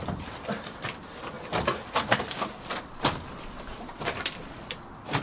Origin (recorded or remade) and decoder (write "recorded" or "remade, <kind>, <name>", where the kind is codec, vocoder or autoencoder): recorded